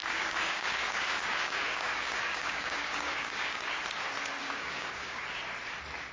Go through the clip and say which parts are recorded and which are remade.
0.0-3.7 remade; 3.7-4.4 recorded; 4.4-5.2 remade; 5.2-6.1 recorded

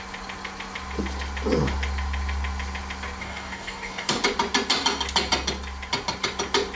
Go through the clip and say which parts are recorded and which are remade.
0.0-3.2 recorded; 3.2-4.1 remade; 4.1-6.8 recorded

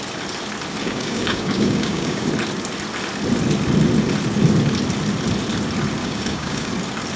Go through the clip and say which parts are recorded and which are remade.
0.0-0.8 recorded; 0.8-2.3 remade; 2.3-6.0 recorded; 6.0-6.7 remade; 6.7-7.2 recorded

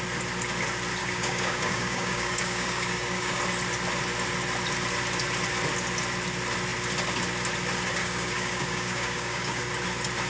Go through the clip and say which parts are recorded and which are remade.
0.0-1.0 recorded; 1.0-3.4 remade; 3.4-8.0 recorded; 8.0-9.6 remade; 9.6-10.3 recorded

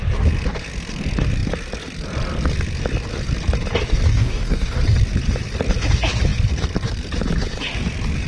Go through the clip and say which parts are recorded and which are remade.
0.0-4.1 recorded; 4.1-4.8 remade; 4.8-8.3 recorded

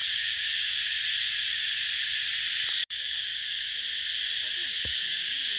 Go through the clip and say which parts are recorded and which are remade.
0.0-0.9 remade; 0.9-2.8 recorded; 2.8-3.8 remade; 3.8-4.9 recorded; 4.9-5.6 remade